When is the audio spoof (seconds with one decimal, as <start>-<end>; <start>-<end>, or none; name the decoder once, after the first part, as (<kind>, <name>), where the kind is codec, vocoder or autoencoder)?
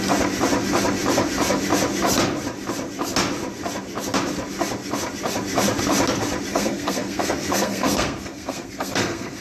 6.5-9.4 (codec, SNAC)